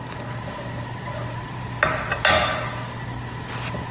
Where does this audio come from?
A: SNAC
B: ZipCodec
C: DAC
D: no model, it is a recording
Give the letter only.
D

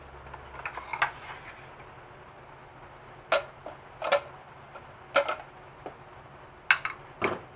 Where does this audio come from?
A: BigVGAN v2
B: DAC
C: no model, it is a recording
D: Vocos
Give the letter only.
C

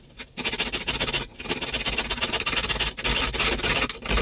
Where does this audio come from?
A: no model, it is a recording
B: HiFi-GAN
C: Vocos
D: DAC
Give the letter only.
A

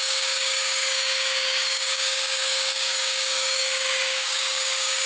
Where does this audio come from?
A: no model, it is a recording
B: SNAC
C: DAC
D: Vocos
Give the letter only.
C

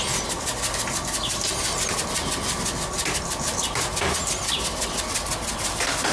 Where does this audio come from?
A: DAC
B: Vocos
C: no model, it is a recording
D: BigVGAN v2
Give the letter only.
C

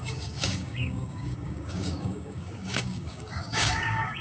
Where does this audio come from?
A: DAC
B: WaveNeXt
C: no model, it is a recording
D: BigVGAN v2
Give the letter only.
A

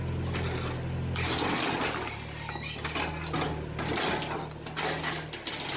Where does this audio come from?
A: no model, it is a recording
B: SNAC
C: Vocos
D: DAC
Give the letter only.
A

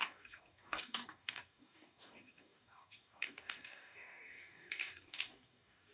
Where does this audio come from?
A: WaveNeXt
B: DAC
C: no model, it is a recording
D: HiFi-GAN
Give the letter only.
B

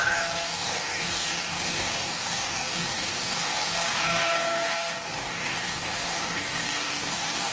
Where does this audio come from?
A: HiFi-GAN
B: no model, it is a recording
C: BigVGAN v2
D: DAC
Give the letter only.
D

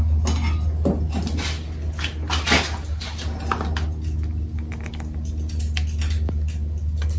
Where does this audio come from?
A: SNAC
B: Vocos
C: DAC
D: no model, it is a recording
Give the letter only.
D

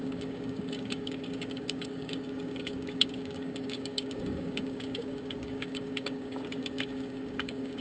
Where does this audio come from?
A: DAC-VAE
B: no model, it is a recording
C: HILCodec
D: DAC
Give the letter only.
D